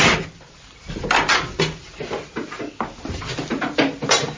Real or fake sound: real